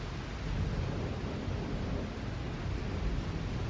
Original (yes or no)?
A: yes